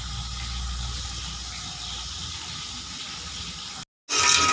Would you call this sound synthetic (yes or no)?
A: no